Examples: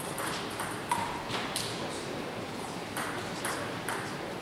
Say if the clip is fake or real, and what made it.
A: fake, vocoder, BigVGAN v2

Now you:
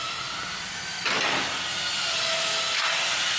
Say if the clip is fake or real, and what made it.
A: real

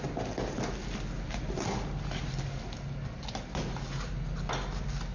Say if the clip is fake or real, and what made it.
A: real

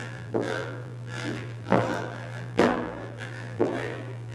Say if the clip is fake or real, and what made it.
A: fake, vocoder, BigVGAN v2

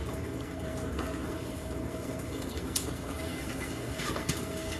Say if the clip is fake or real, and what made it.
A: fake, codec, SNAC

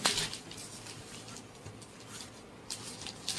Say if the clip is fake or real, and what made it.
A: real